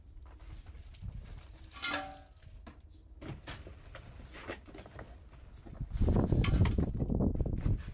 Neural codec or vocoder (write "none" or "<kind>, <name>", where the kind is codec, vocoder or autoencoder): none